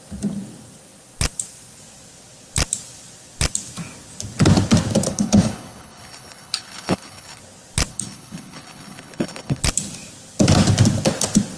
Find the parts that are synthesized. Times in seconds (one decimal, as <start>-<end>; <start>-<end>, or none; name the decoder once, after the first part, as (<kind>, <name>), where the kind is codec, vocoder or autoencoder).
5.1-7.4 (codec, HILCodec); 7.9-9.6